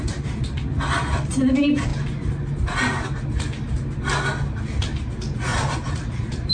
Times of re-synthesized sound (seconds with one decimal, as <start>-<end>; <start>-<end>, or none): 5.5-6.5